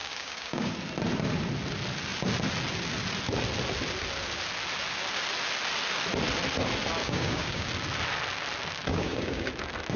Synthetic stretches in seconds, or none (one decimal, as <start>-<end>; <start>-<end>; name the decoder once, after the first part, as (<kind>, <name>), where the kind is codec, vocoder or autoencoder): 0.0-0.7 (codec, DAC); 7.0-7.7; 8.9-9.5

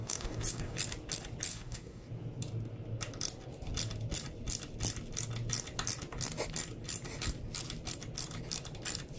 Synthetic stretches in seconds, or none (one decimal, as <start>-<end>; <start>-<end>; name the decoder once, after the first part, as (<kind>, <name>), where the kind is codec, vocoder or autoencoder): 0.0-0.8 (codec, DAC); 1.5-2.1

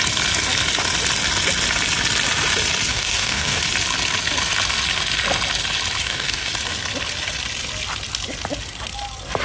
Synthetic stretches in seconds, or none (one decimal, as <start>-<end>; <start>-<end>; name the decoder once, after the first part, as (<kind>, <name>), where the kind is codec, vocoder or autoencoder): 2.9-3.6 (codec, DAC); 6.0-6.5

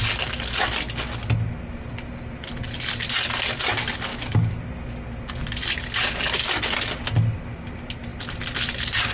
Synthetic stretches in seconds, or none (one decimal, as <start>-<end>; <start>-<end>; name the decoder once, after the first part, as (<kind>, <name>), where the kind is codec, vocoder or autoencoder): 4.1-4.6 (codec, DAC)

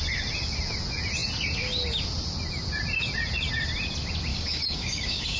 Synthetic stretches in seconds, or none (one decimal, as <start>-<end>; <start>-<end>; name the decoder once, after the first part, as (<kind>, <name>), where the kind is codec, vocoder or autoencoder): 4.3-5.4 (codec, DAC)

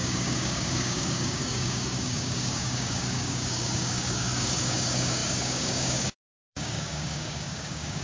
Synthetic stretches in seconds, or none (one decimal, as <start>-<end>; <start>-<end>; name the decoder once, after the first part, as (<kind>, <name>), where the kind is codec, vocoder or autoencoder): 0.0-8.0 (codec, DAC)